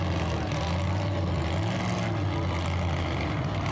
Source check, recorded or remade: recorded